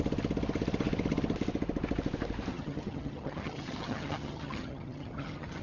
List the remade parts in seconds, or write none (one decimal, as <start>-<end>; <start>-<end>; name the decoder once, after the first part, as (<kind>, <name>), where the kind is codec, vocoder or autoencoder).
2.5-5.6 (vocoder, HiFi-GAN)